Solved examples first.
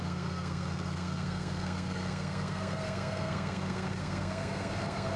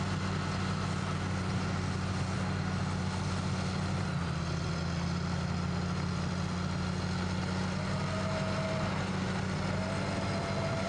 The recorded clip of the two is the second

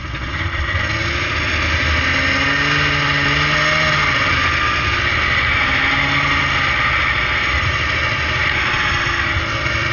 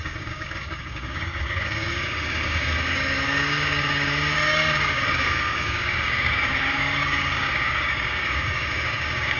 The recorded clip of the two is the first